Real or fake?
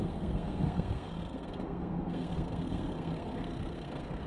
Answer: fake